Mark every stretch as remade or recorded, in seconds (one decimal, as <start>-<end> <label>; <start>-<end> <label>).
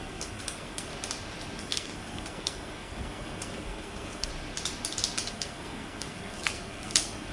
0.0-0.9 remade; 0.9-1.6 recorded; 1.6-4.3 remade; 4.3-5.3 recorded; 5.3-7.3 remade